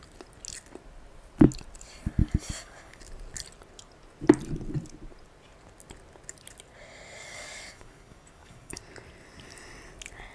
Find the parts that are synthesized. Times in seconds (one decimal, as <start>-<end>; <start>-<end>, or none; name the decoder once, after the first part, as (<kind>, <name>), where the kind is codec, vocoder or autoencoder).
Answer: 2.2-3.0 (codec, DAC); 7.2-8.8